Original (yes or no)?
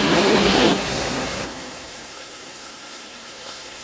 no